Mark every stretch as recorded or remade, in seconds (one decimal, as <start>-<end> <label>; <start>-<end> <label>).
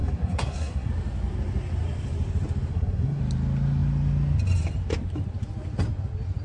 0.0-0.9 remade; 0.9-2.7 recorded; 2.7-3.2 remade; 3.2-6.4 recorded